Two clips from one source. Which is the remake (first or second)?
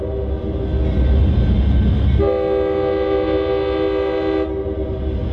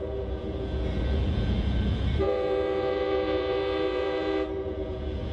second